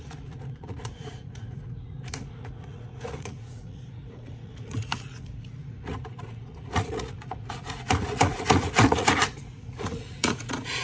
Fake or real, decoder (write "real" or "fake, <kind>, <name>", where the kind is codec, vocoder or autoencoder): fake, vocoder, Vocos